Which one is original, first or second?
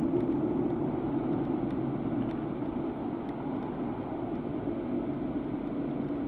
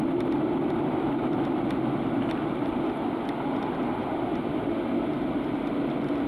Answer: first